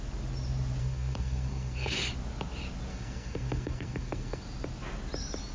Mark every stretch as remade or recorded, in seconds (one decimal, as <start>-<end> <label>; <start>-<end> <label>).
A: 0.0-0.8 recorded; 0.8-2.0 remade; 2.0-2.9 recorded; 2.9-4.4 remade; 4.4-5.5 recorded